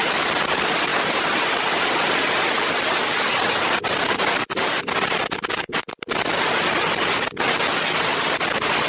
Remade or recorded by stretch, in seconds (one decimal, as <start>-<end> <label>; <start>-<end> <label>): 0.0-8.9 recorded